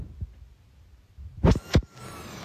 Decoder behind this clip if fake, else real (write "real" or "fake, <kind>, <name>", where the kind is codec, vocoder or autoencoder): real